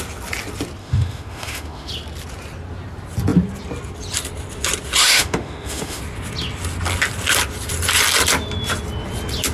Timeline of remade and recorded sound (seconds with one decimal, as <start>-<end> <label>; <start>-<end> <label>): 0.0-0.8 recorded; 0.8-1.9 remade; 1.9-5.0 recorded; 5.0-6.0 remade; 6.0-9.5 recorded